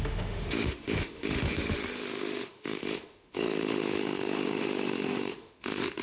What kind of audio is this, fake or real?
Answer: fake